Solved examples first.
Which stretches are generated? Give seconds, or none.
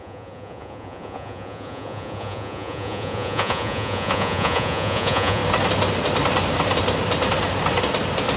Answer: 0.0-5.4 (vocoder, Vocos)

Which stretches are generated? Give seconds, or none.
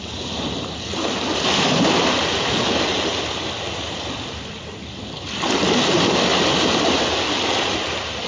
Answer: none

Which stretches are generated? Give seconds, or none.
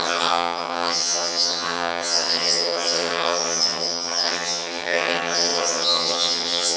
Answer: 0.0-6.8 (vocoder, HiFi-GAN)